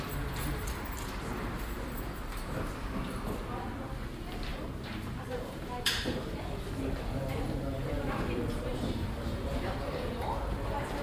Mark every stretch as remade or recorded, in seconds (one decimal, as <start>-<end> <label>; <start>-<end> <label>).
0.0-4.5 recorded; 4.5-6.4 remade; 6.4-8.7 recorded; 8.7-10.1 remade; 10.1-11.0 recorded